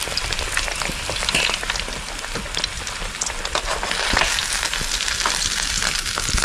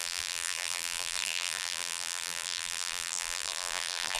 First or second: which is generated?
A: second